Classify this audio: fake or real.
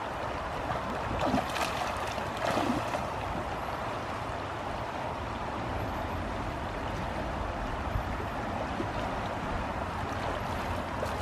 real